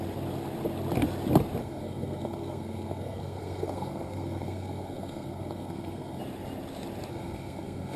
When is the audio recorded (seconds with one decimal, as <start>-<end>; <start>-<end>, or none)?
0.0-1.6; 6.2-7.1